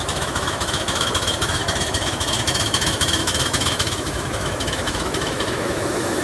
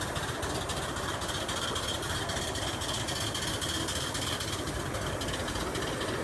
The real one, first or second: second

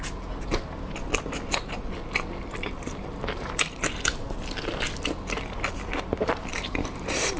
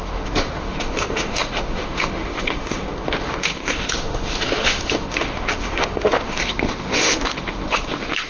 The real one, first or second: first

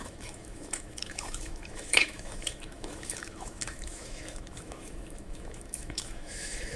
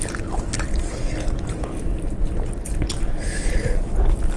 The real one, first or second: second